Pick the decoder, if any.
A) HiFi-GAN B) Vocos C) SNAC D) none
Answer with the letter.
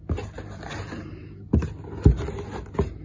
D